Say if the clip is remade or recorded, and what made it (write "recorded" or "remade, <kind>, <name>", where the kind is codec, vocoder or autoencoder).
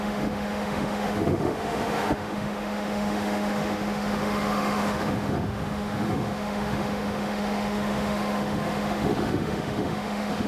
remade, autoencoder, DAC-VAE